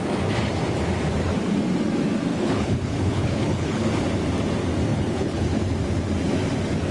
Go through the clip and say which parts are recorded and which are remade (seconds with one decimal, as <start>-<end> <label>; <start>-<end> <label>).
0.0-2.3 recorded; 2.3-3.9 remade; 3.9-4.9 recorded; 4.9-5.6 remade; 5.6-6.9 recorded